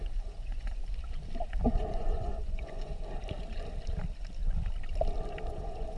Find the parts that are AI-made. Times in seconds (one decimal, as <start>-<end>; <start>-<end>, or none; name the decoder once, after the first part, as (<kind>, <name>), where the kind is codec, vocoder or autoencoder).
0.0-0.8 (vocoder, Vocos); 1.7-2.9; 5.5-6.0